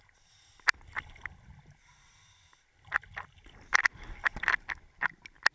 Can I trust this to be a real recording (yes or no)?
yes